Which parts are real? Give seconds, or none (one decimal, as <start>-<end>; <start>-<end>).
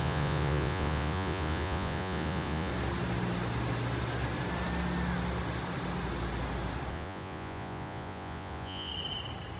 2.7-6.9; 8.9-9.6